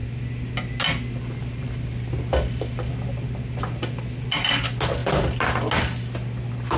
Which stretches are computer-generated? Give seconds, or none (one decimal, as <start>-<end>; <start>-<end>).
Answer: none